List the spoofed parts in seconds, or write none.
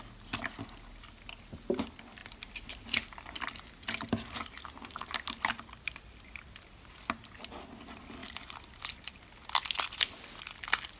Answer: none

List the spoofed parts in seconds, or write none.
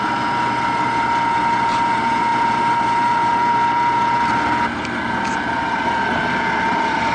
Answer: none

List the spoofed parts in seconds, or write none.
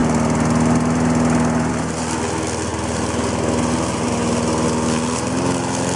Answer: none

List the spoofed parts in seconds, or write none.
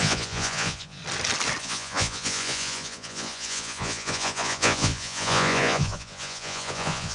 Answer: 0.0-1.0 (vocoder, Vocos); 1.6-7.1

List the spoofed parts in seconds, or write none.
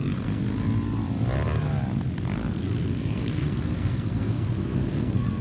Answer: 0.0-0.4 (codec, SNAC); 2.8-5.4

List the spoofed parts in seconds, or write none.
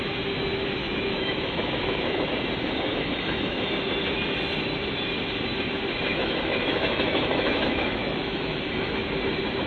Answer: 0.8-2.2 (autoencoder, DAC-VAE); 2.9-3.7; 6.1-9.0